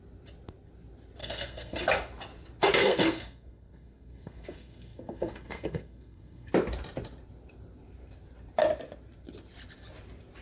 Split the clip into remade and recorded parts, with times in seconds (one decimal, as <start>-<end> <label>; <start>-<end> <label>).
0.0-1.2 recorded; 1.2-1.8 remade; 1.8-2.8 recorded; 2.8-6.5 remade; 6.5-10.4 recorded